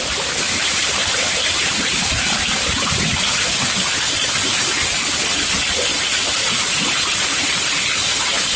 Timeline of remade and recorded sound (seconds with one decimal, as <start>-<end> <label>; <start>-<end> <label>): 0.0-1.0 recorded; 1.0-3.1 remade; 3.1-4.4 recorded; 4.4-5.0 remade; 5.0-5.9 recorded; 5.9-7.6 remade; 7.6-8.6 recorded